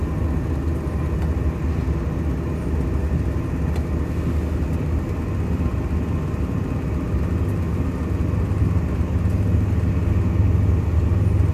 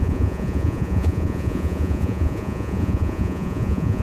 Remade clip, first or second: second